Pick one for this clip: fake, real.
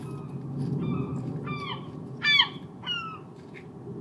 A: real